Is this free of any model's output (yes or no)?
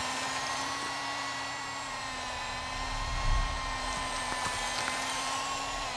no